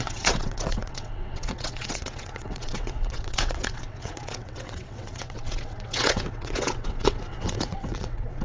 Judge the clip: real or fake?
fake